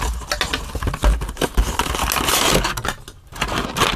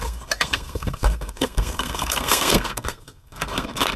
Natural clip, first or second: first